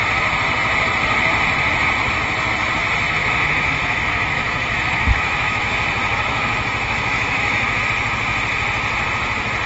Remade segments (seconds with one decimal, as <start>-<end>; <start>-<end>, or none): 3.2-7.8